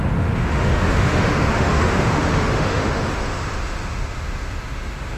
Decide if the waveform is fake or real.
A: fake